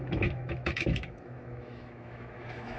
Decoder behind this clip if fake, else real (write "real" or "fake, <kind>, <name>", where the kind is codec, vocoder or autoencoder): fake, autoencoder, DAC-VAE